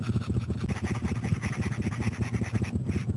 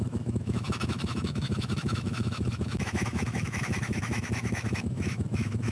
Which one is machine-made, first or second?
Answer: second